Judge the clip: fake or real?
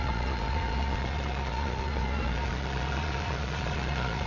fake